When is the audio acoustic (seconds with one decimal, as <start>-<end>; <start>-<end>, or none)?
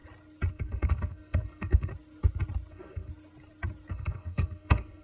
0.0-0.5; 1.9-2.7; 3.1-3.9